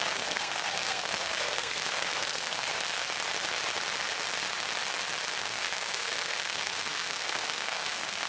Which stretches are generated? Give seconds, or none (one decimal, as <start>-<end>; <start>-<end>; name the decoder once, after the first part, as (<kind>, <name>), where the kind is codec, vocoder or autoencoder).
0.0-2.7 (codec, SNAC); 5.4-8.3